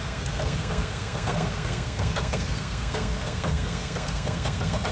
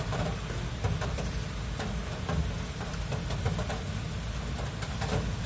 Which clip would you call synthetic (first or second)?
first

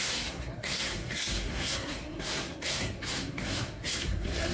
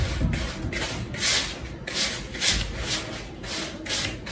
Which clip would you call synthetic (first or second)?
first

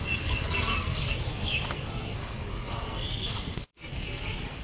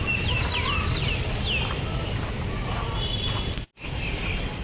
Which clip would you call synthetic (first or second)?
first